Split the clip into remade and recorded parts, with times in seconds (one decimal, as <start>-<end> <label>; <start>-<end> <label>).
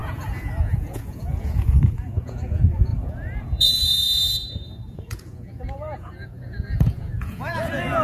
0.0-8.0 remade